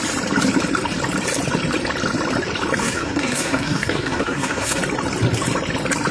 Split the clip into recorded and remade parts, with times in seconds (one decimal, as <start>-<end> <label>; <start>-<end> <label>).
0.0-2.8 recorded; 2.8-4.8 remade; 4.8-6.1 recorded